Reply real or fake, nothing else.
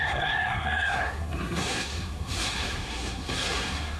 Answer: fake